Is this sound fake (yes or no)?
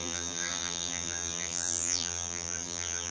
yes